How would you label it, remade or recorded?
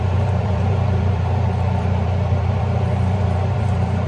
remade